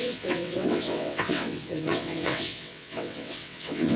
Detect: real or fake fake